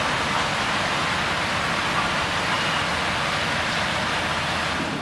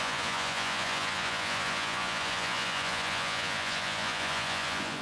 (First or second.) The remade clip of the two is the second